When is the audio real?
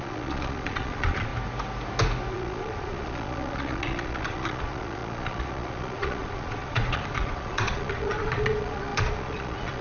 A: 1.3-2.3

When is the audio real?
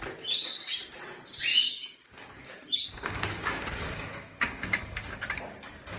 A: 0.0-1.5; 5.1-6.0